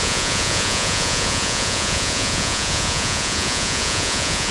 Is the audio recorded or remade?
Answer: remade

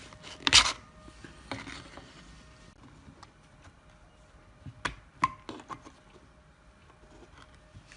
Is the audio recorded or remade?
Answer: recorded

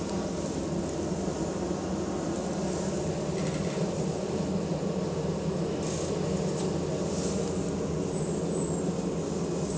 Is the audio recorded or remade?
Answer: recorded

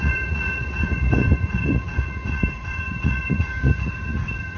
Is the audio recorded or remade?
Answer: remade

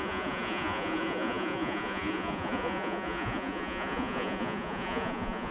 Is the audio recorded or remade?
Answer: remade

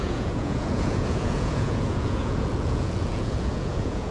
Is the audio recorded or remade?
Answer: remade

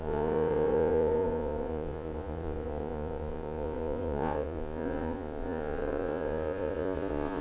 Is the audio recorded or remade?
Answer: remade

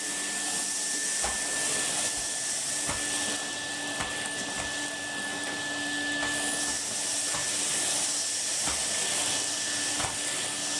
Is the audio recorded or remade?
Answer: recorded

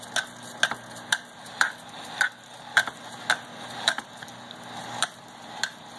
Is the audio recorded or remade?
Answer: recorded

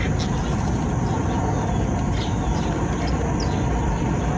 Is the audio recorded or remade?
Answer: recorded